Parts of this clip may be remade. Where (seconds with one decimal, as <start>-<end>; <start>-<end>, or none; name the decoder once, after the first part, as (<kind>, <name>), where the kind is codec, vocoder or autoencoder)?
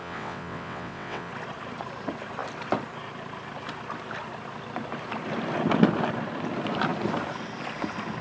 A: 0.0-1.3 (vocoder, WaveNeXt)